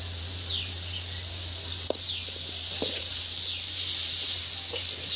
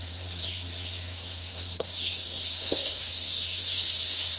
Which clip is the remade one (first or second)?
second